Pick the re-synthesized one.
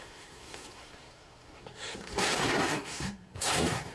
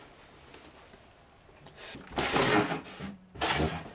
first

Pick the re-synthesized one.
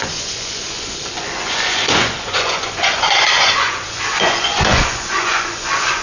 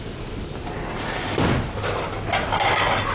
first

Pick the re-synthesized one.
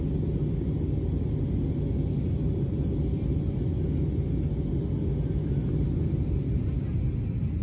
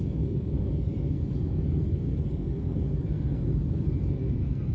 second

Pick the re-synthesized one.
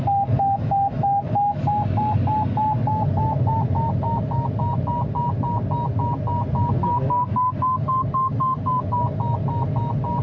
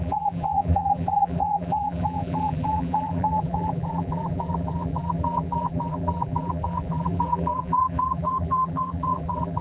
second